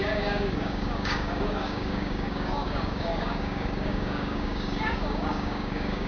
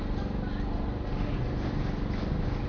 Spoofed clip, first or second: first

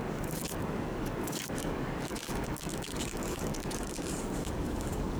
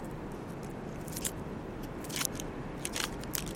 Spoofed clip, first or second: first